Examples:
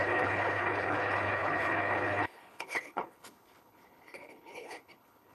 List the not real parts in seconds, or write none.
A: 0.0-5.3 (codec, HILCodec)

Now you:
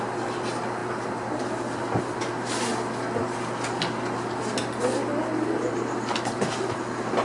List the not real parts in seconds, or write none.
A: none

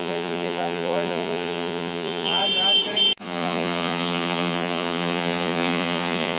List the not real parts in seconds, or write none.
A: 0.0-2.4 (vocoder, Vocos); 3.2-6.4

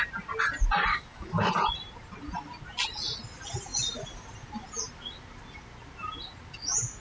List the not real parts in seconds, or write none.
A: 0.9-1.5 (codec, DAC)

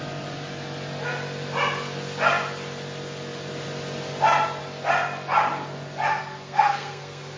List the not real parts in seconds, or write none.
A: 6.2-7.4 (codec, SNAC)

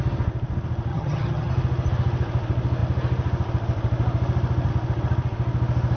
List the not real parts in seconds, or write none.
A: 0.9-1.5 (vocoder, HiFi-GAN)

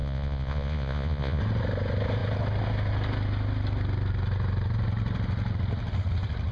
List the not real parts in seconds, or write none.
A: 0.0-1.4 (vocoder, Vocos)